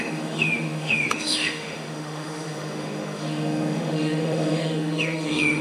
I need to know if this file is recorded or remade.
remade